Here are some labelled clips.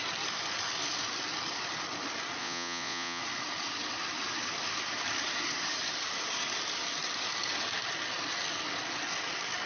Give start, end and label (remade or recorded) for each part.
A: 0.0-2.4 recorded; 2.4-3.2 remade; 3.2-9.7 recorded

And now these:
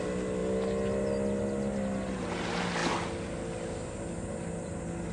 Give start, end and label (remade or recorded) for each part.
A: 0.0-5.1 recorded

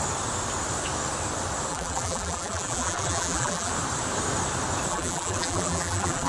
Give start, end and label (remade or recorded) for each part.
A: 0.0-1.7 recorded; 1.7-3.7 remade; 3.7-4.9 recorded; 4.9-6.3 remade

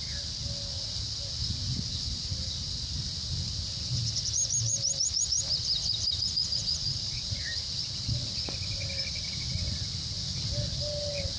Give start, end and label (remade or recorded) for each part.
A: 0.0-6.8 recorded; 6.8-7.4 remade; 7.4-11.4 recorded